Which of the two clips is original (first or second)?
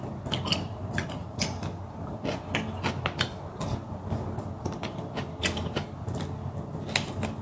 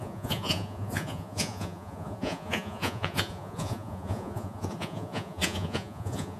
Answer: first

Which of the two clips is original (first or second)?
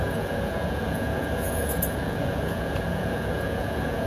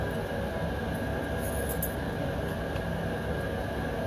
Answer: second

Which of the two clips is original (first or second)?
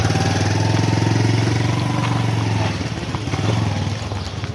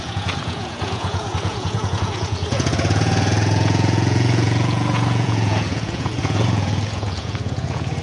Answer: first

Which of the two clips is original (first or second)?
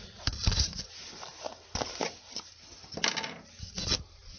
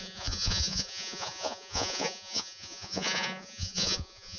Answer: first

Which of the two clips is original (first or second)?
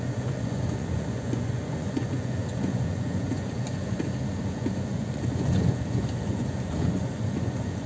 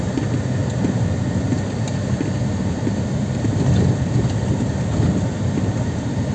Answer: second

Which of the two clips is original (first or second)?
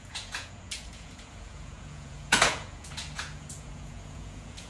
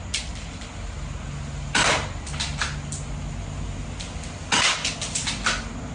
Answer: second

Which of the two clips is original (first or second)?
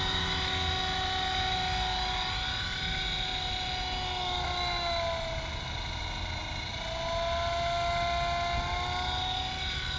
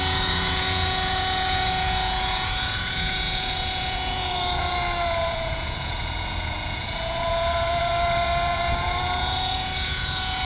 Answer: first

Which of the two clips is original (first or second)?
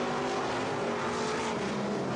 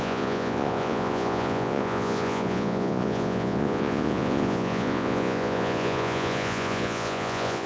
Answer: first